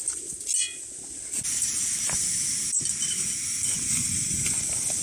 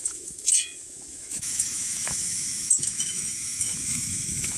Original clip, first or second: first